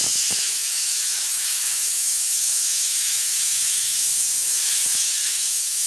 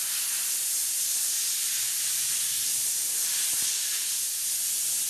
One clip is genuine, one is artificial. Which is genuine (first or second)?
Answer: second